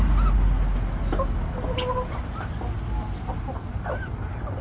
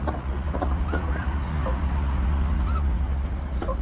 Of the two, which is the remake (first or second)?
second